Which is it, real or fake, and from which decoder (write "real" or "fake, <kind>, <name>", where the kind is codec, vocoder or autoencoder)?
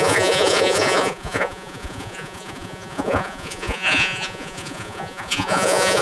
fake, vocoder, Vocos